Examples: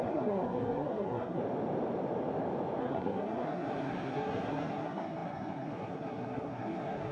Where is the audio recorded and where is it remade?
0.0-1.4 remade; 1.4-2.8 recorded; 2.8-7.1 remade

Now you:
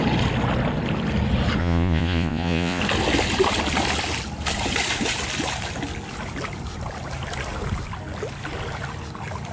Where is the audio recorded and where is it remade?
0.0-1.6 recorded; 1.6-2.8 remade; 2.8-9.5 recorded

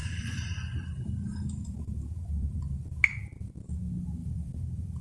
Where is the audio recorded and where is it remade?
0.0-3.0 remade; 3.0-4.2 recorded; 4.2-5.0 remade

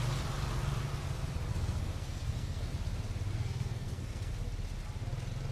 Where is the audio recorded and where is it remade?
0.0-1.5 recorded; 1.5-2.7 remade; 2.7-3.3 recorded; 3.3-4.3 remade; 4.3-5.5 recorded

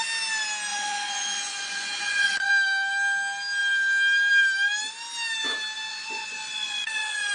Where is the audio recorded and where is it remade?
0.0-0.7 recorded; 0.7-2.5 remade; 2.5-5.9 recorded; 5.9-7.3 remade

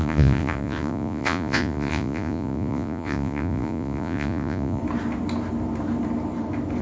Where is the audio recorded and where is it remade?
0.0-4.8 remade; 4.8-6.8 recorded